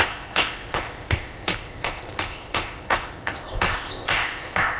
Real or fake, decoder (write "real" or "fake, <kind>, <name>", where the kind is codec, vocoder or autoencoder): fake, codec, ZipCodec